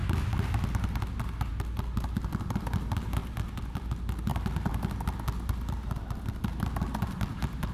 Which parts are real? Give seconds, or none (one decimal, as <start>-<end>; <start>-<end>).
0.0-7.7